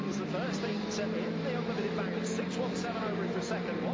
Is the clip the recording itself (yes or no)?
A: yes